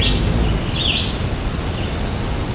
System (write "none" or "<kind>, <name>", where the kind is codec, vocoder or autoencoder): none